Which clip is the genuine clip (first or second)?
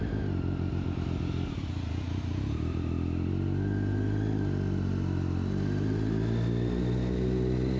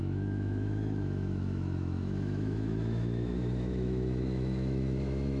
first